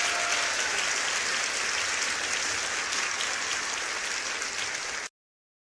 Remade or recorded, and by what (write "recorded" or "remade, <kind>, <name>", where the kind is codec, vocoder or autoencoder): recorded